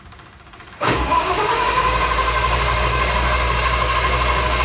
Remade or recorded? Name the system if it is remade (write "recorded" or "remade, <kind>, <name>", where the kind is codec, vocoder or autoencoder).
remade, codec, DAC